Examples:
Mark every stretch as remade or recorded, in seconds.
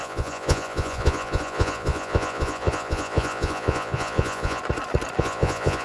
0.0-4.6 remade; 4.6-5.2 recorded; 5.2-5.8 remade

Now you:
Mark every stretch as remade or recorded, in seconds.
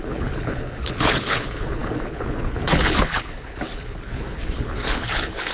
0.0-5.5 remade